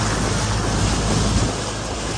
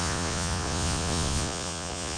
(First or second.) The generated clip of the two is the second